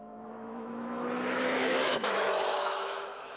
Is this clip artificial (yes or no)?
yes